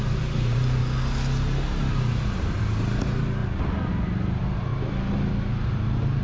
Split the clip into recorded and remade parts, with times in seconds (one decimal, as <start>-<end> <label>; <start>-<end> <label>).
0.0-0.8 remade; 0.8-1.8 recorded; 1.8-3.4 remade; 3.4-3.9 recorded; 3.9-4.7 remade; 4.7-5.7 recorded; 5.7-6.2 remade